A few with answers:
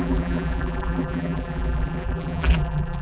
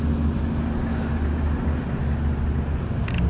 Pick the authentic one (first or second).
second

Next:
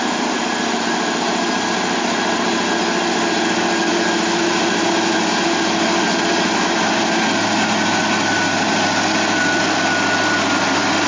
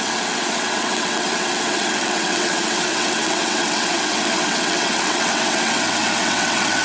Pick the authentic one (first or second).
first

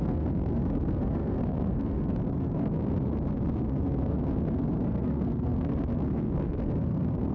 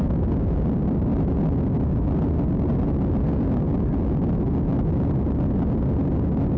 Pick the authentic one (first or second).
second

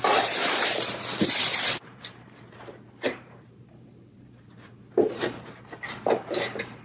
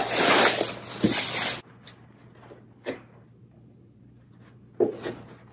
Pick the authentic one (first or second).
second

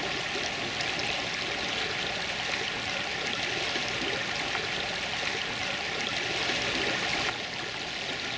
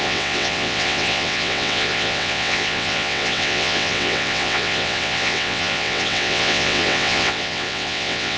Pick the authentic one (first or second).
first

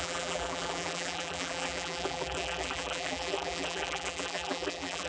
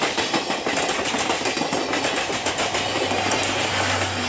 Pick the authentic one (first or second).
second